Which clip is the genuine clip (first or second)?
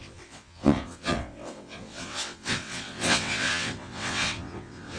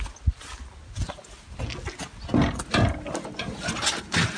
second